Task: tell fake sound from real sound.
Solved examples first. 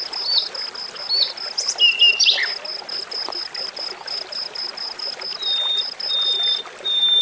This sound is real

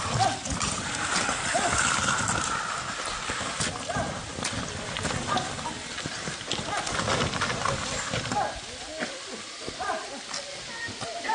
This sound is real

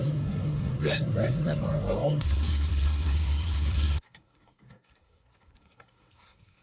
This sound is fake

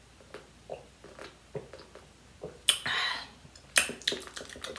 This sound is real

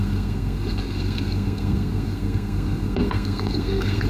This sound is fake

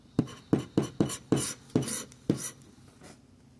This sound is real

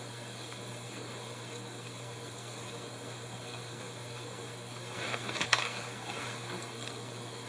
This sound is fake